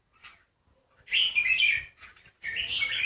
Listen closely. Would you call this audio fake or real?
real